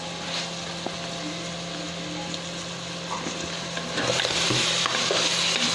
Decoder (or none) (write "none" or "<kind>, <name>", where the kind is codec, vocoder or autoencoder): none